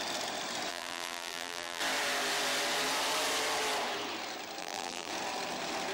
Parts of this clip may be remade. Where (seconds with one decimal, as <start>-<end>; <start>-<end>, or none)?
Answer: 0.7-1.8; 4.6-5.1